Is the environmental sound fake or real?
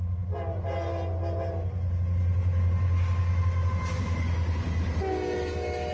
real